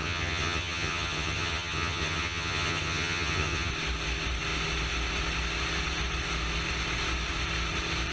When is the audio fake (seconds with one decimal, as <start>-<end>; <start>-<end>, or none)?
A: 0.0-3.7